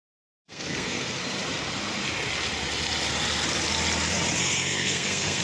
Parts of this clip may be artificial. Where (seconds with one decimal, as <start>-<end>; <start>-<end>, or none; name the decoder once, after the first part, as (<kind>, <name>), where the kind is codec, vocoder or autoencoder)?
0.0-1.2 (codec, SNAC); 4.4-5.4